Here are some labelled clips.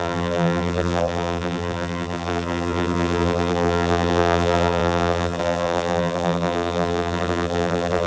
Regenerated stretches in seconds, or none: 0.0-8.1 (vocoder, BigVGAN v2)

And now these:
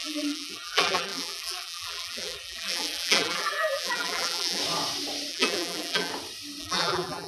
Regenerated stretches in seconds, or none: 0.0-4.6 (vocoder, BigVGAN v2); 5.3-6.1; 6.6-7.3

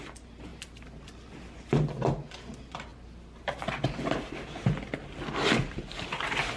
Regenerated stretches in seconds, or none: 0.5-1.0 (vocoder, BigVGAN v2); 2.9-5.2

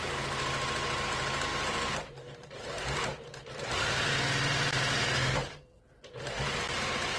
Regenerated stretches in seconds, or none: 1.5-5.8 (vocoder, BigVGAN v2)

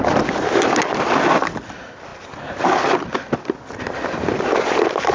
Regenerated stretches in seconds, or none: none

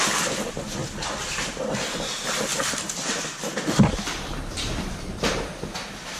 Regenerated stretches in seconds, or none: none

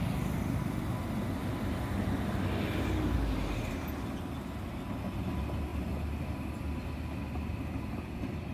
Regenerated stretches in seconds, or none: 1.4-2.4 (vocoder, BigVGAN v2); 5.7-6.3

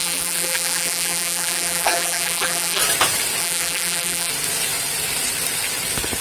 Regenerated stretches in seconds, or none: 0.0-2.8 (vocoder, BigVGAN v2); 3.4-4.3